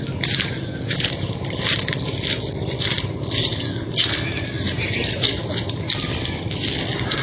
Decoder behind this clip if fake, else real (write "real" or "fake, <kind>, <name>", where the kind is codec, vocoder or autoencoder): real